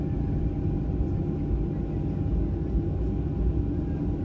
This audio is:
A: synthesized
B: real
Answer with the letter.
B